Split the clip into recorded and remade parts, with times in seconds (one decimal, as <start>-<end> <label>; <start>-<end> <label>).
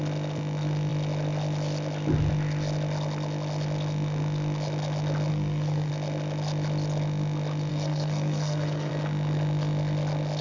0.0-5.3 recorded; 5.3-5.9 remade; 5.9-7.7 recorded; 7.7-8.9 remade; 8.9-10.4 recorded